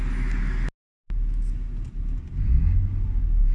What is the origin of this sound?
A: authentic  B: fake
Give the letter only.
A